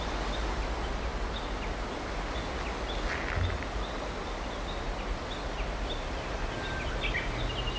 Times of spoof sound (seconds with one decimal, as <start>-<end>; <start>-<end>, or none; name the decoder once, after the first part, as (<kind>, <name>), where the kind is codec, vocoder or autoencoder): none